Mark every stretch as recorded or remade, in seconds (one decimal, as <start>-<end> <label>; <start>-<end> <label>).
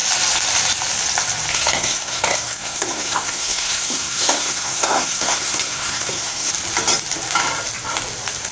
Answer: 0.0-1.5 recorded; 1.5-6.5 remade; 6.5-8.5 recorded